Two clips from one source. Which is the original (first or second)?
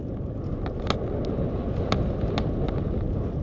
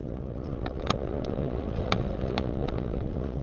first